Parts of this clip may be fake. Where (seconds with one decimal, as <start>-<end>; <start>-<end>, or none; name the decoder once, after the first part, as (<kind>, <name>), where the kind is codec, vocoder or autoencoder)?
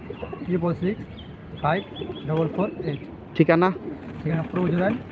0.0-1.4 (vocoder, BigVGAN v2); 4.3-5.1